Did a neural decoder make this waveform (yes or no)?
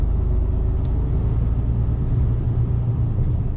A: no